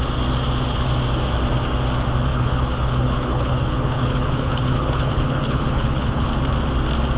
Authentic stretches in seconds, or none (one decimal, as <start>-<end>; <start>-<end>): 0.0-2.3; 6.3-7.2